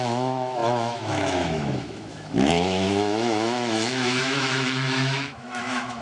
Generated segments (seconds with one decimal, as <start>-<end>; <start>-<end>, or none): 0.0-6.0